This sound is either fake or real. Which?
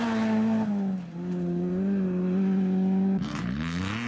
real